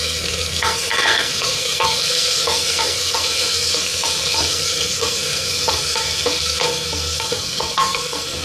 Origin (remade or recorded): remade